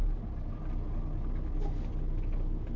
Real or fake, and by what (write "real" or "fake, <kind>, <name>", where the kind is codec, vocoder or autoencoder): real